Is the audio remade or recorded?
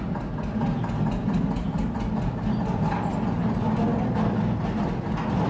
recorded